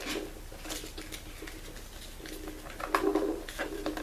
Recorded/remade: recorded